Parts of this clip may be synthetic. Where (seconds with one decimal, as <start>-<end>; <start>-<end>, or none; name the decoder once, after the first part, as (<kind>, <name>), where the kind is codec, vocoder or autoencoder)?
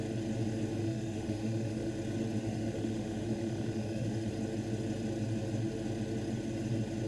0.8-1.9 (autoencoder, DAC-VAE); 2.4-4.3